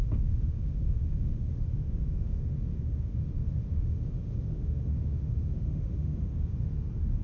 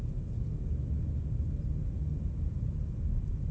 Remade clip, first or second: first